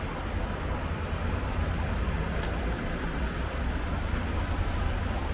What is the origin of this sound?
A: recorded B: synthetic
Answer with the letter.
B